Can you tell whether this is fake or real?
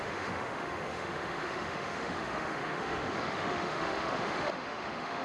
fake